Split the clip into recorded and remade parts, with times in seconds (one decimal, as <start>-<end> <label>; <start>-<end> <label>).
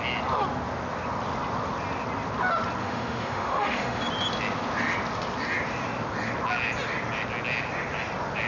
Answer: 0.0-2.8 recorded; 2.8-4.0 remade; 4.0-8.5 recorded